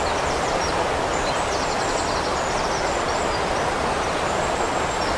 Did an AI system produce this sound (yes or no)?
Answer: yes